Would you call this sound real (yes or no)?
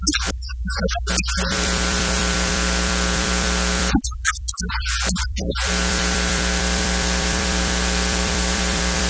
no